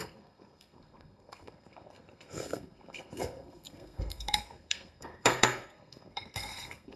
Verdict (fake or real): fake